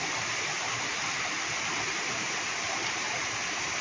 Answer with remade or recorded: recorded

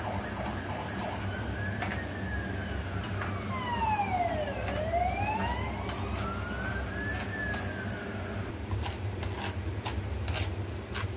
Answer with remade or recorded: recorded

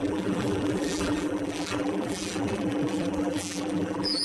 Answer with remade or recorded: remade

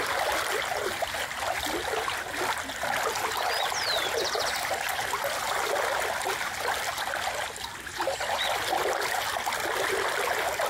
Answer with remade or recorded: recorded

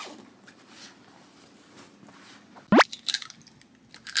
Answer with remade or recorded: recorded